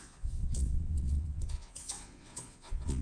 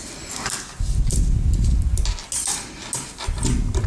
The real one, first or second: second